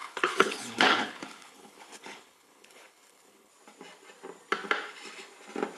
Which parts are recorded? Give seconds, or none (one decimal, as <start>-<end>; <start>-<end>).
3.5-5.8

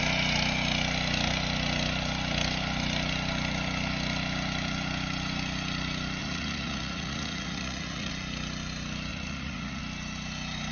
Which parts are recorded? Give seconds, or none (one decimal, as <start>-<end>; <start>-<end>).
0.0-6.2; 8.1-9.1; 9.8-10.7

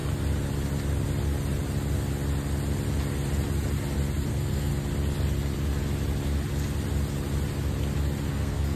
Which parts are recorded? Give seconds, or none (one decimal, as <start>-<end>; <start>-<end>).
0.0-4.3; 4.7-8.3

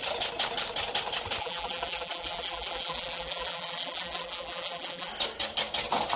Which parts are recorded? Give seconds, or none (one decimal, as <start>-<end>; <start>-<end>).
0.0-1.4; 5.1-6.2

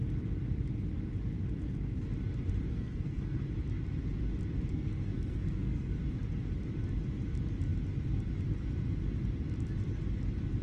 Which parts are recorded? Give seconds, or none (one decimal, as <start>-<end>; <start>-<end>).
0.0-2.7; 3.4-4.7; 6.0-10.6

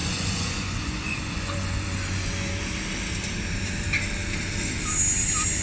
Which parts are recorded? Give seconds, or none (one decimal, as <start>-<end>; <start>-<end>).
2.5-5.6